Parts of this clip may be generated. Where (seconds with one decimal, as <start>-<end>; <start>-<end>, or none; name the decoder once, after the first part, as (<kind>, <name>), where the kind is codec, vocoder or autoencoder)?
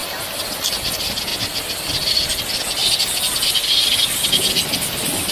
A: none